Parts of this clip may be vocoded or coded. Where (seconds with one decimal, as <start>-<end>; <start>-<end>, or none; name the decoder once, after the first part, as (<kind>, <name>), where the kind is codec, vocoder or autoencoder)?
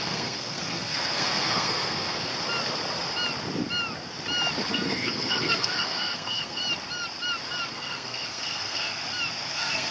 0.0-2.3 (codec, SNAC); 4.7-6.6; 7.7-9.0; 9.5-9.9